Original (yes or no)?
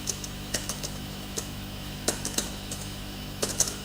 no